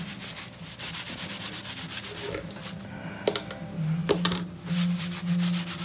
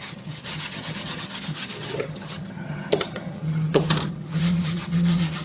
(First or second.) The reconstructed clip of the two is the second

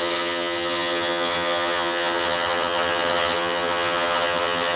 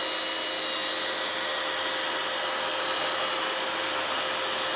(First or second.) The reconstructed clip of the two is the first